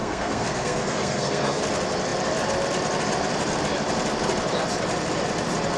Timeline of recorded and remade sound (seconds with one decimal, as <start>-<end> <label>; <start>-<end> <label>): 0.0-1.6 remade; 1.6-5.8 recorded